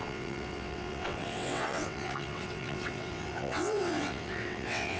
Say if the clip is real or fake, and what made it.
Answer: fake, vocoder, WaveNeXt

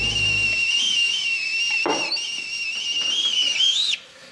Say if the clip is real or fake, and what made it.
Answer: real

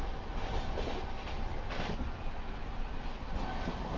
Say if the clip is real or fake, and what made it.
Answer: real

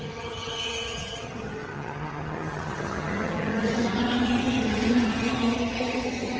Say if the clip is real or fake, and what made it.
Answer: fake, vocoder, HiFi-GAN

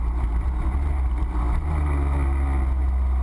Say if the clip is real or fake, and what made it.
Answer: real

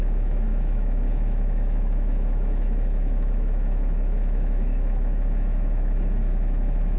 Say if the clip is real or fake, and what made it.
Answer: fake, autoencoder, DAC-VAE